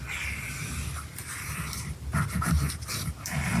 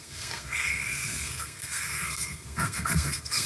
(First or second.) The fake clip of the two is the second